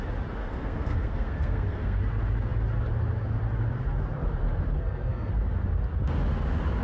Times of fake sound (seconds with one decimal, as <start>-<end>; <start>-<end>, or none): 0.4-2.0; 4.7-5.3